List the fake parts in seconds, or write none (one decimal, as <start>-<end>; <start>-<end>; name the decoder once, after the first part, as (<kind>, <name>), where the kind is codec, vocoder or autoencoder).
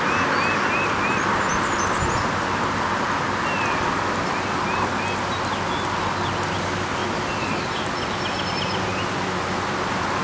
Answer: none